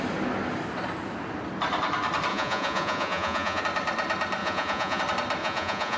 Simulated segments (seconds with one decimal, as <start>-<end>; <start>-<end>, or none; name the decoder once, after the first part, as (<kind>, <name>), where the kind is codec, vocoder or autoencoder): 2.3-3.6 (vocoder, Vocos); 4.4-5.0; 5.4-6.0

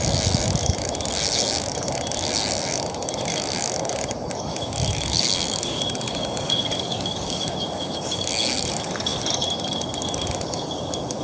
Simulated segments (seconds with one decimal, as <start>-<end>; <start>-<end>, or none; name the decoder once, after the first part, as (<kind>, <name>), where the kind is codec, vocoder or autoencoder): 0.0-11.2 (codec, DAC)

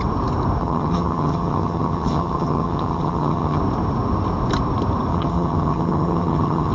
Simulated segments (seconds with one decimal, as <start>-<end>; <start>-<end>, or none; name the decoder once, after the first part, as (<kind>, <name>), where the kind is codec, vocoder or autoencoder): 0.6-3.6 (vocoder, HiFi-GAN); 5.1-6.7

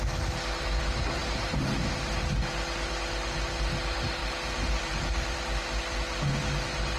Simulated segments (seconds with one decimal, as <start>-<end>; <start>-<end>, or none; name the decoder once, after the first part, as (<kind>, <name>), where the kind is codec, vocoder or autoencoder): 1.2-1.9 (vocoder, BigVGAN v2); 4.2-5.0